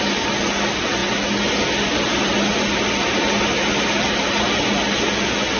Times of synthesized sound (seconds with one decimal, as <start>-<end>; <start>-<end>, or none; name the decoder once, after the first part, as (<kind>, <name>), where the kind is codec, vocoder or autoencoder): none